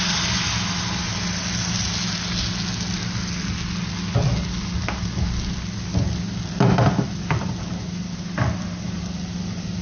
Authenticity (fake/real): real